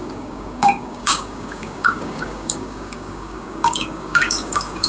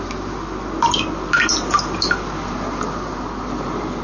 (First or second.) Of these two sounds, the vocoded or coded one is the first